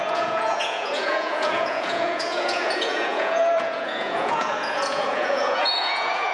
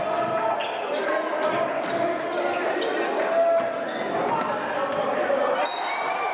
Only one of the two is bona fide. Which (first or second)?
second